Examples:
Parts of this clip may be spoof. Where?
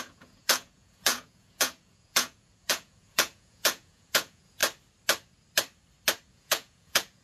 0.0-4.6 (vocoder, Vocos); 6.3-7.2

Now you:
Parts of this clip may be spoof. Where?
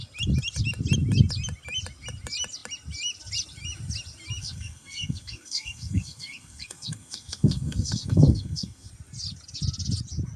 4.4-8.9 (codec, SNAC)